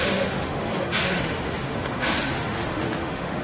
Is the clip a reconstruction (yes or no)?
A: yes